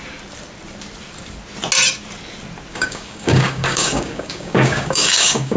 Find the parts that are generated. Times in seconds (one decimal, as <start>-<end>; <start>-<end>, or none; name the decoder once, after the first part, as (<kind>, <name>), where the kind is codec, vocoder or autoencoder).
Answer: 2.7-5.6 (codec, DAC)